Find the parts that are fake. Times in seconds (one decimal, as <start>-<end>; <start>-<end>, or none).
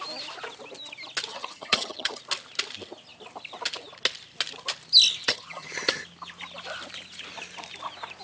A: 1.3-2.2; 5.2-6.0